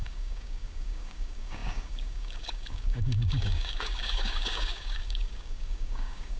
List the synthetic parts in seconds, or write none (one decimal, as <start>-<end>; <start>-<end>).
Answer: 0.0-6.4